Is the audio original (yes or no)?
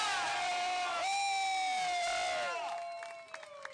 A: yes